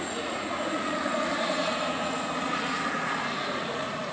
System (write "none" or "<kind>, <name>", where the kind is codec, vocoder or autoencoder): vocoder, Vocos